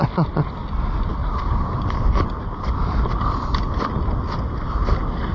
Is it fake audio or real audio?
real